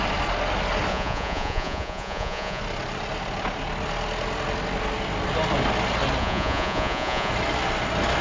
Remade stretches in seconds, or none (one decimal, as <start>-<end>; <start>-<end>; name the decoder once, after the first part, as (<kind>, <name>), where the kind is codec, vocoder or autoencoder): 0.9-2.6 (vocoder, Vocos); 6.2-7.3